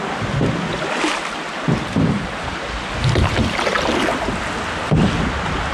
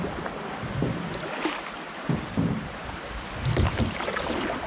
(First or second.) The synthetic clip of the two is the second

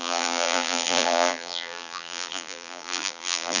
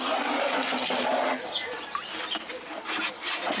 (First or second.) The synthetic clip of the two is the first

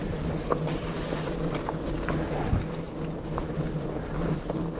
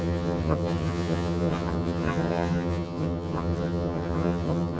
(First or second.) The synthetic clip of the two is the second